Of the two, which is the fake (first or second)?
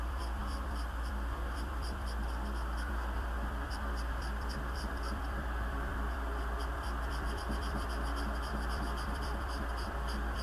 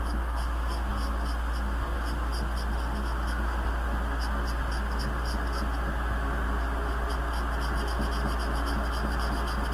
first